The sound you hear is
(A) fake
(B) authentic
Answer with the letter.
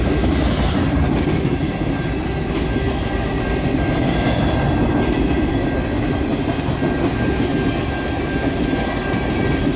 B